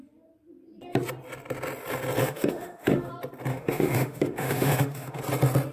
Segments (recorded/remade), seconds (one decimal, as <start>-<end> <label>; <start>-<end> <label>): 0.0-2.2 recorded; 2.2-3.1 remade; 3.1-3.5 recorded; 3.5-5.2 remade; 5.2-5.7 recorded